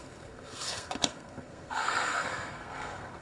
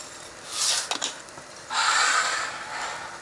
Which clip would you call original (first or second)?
second